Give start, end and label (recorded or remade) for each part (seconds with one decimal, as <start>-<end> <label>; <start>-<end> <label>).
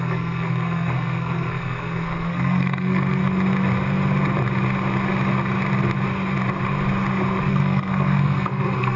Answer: 0.0-3.2 remade; 3.2-7.5 recorded; 7.5-9.0 remade